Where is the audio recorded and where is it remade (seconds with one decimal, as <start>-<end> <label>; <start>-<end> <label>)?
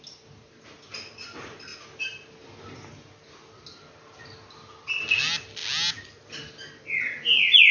0.0-7.7 recorded